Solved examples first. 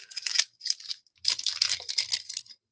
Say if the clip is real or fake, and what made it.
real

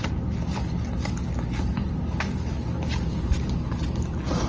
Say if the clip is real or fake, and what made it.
real